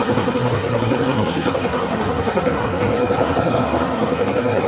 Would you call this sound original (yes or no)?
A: no